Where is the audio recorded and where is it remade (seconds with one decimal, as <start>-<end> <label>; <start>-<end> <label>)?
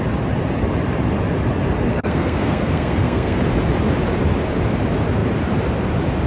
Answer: 0.0-1.9 recorded; 1.9-3.4 remade; 3.4-6.3 recorded